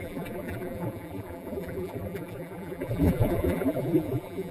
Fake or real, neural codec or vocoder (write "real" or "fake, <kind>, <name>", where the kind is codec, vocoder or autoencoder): fake, vocoder, BigVGAN v2